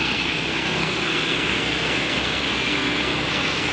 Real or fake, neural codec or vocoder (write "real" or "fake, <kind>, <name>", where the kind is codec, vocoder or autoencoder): fake, codec, SNAC